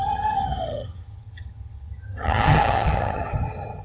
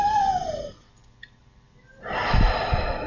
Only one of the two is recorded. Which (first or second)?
second